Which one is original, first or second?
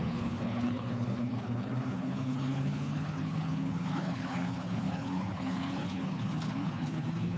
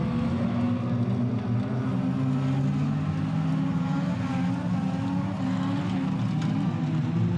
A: second